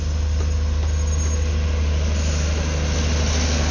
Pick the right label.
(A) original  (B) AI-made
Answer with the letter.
A